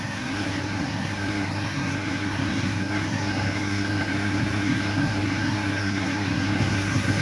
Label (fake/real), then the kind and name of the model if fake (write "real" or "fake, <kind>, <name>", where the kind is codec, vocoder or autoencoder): fake, codec, SNAC